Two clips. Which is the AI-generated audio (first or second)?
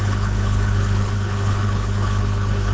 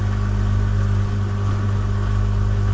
first